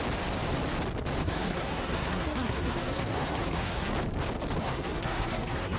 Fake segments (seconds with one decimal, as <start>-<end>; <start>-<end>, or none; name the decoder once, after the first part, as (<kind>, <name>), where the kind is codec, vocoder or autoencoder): 1.2-3.9 (codec, SNAC); 4.6-5.8